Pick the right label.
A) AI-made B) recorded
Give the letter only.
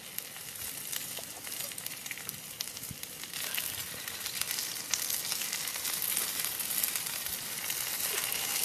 B